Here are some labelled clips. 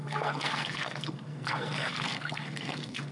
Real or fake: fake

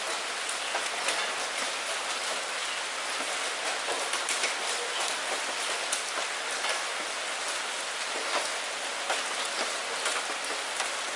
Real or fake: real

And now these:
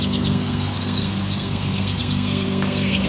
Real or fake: fake